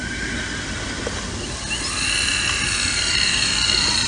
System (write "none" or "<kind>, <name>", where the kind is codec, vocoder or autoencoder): none